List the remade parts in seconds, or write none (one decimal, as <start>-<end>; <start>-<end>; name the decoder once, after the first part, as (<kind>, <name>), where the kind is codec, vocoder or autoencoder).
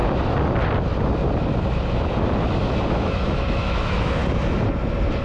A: 2.9-4.2 (autoencoder, DAC-VAE)